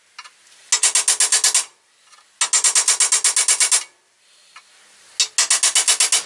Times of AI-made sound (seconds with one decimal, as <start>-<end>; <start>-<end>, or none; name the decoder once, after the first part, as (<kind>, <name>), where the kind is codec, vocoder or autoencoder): none